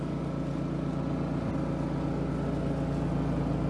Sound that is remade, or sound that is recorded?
recorded